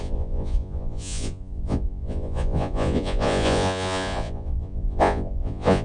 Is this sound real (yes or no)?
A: no